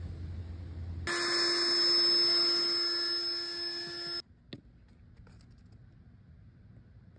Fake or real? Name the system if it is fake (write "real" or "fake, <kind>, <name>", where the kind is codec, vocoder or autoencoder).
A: real